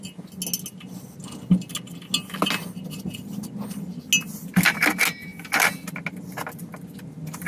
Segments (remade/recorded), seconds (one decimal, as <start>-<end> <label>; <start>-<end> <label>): 0.0-7.5 recorded

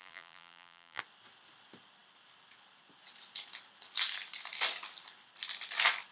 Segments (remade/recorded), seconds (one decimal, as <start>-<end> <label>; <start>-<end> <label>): 0.0-1.0 remade; 1.0-6.1 recorded

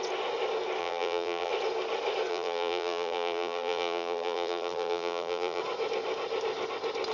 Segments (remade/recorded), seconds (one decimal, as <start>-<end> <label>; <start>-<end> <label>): 0.0-0.8 recorded; 0.8-1.5 remade; 1.5-2.3 recorded; 2.3-5.6 remade; 5.6-7.1 recorded

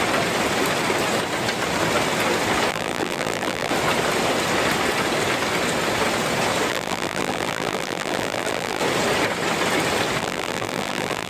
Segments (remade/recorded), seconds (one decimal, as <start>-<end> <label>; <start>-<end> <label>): 0.0-2.7 recorded; 2.7-3.7 remade; 3.7-6.7 recorded; 6.7-8.8 remade; 8.8-10.2 recorded; 10.2-11.3 remade